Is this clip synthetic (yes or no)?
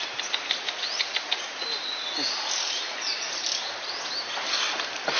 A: no